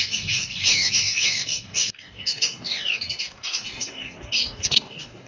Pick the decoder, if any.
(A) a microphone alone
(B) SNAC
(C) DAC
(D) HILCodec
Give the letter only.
C